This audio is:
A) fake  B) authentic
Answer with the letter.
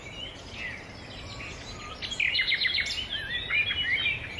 B